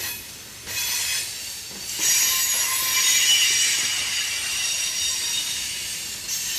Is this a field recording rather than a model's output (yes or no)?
yes